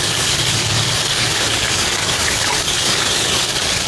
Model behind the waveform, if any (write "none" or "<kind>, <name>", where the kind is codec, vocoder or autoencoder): codec, DAC